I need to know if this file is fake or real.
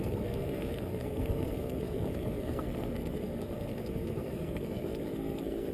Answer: fake